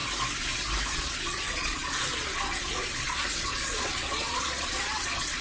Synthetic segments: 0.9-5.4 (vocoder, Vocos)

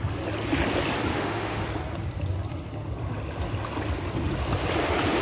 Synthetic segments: 1.1-1.6 (autoencoder, DAC-VAE)